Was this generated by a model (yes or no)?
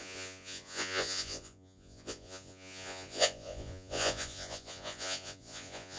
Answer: yes